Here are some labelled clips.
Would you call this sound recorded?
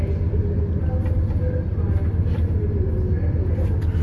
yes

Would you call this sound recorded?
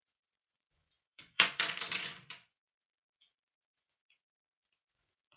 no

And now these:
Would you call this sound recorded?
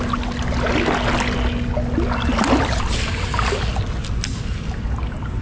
yes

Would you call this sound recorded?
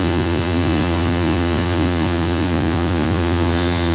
no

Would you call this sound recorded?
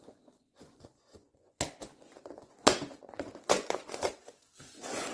no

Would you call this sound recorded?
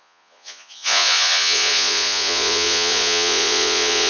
no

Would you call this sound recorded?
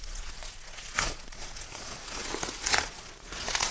no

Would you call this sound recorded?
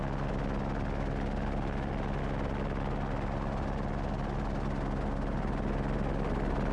yes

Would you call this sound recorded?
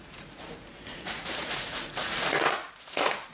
no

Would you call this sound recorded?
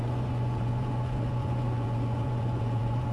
no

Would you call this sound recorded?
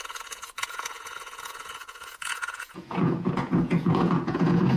no